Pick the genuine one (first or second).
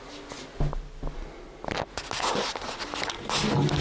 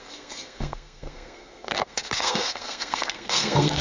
first